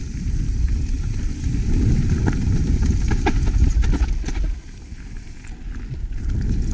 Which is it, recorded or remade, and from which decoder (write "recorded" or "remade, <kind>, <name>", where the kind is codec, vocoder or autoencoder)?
recorded